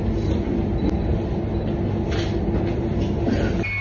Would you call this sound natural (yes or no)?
yes